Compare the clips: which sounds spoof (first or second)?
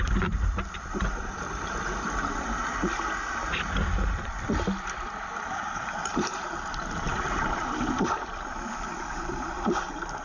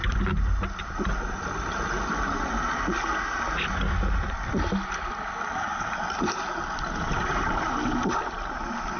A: first